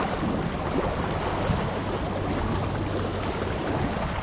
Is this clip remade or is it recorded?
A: recorded